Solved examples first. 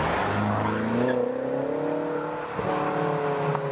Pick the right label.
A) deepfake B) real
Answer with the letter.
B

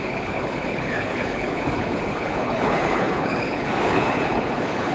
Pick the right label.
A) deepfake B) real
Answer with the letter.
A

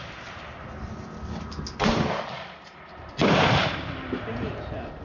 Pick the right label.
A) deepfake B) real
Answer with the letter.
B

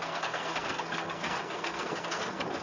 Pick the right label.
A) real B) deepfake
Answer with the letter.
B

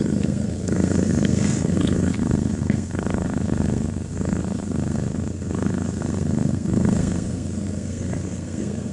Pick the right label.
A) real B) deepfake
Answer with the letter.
B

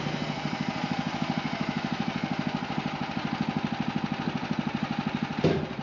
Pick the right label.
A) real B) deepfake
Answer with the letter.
A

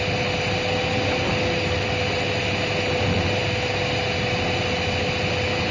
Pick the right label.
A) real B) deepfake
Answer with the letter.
A